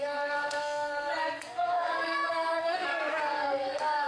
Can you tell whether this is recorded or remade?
remade